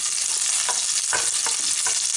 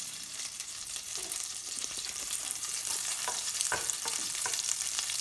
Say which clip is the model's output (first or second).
second